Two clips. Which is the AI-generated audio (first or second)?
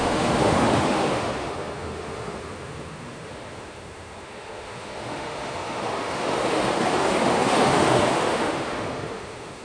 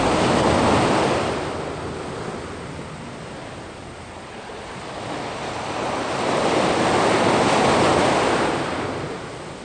first